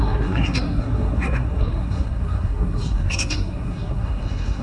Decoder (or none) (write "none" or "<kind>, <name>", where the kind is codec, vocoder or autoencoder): codec, SNAC